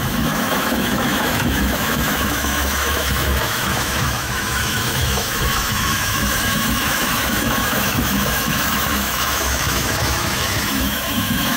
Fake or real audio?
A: fake